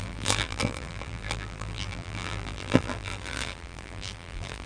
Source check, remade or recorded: remade